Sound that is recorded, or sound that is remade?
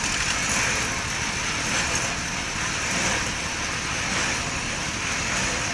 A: recorded